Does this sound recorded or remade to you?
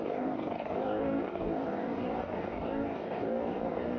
remade